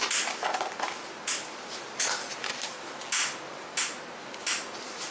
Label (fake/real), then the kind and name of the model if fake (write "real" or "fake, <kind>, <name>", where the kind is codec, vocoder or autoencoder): real